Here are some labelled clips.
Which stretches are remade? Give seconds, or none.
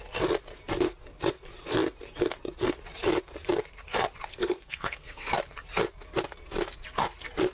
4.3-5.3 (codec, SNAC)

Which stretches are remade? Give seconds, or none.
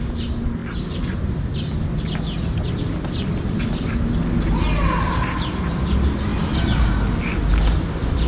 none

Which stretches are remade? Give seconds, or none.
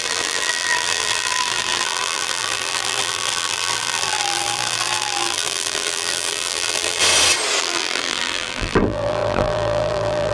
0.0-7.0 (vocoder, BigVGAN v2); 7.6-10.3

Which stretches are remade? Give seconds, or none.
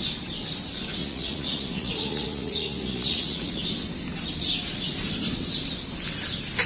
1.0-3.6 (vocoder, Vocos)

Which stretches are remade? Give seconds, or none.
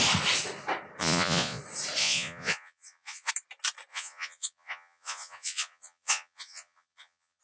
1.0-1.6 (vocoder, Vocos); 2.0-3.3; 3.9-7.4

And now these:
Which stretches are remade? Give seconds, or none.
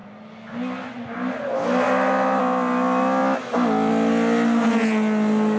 none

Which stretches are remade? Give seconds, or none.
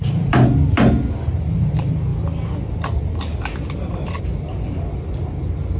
none